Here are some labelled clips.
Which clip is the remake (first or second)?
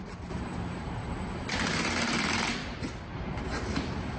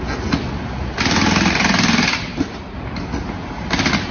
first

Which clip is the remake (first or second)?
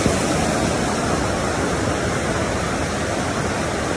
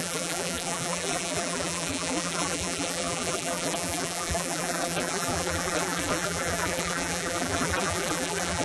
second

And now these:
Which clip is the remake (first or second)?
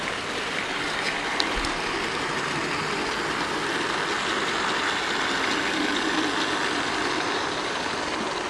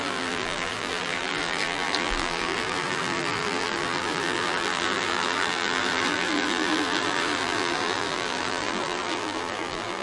second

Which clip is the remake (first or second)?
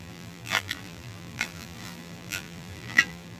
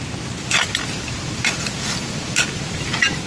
first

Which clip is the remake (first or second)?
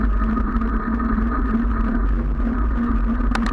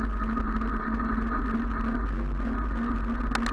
first